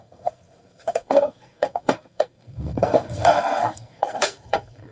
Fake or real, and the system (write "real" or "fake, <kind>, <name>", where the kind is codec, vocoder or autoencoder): fake, codec, SNAC